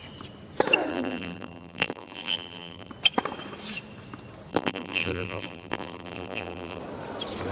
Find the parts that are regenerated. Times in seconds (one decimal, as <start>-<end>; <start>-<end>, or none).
0.9-2.9; 4.5-6.8